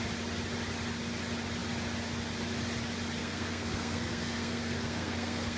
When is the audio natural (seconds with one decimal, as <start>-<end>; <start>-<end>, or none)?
0.0-3.2